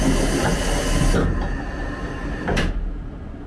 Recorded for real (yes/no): yes